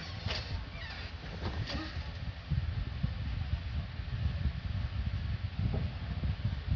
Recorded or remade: recorded